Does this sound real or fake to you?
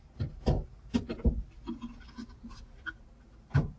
real